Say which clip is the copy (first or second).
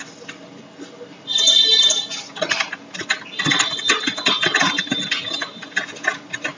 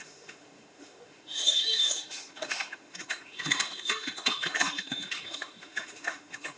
second